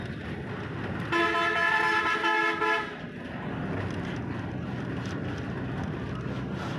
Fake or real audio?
real